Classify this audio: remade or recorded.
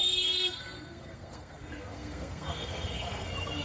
remade